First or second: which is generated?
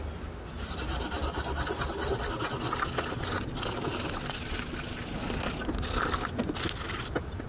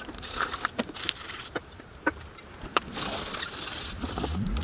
second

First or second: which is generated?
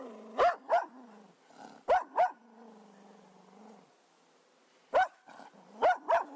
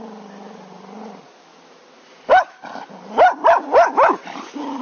second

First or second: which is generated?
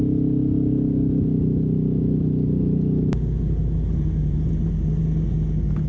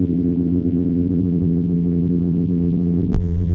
second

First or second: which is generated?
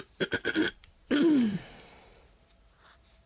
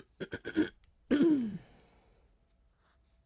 first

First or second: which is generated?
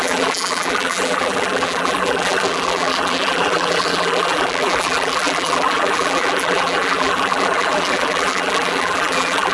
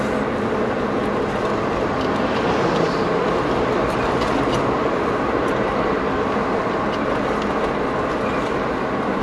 first